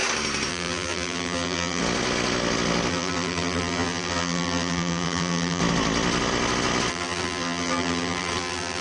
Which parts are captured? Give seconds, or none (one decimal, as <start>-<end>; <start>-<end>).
0.0-0.5; 1.8-2.9; 5.6-6.9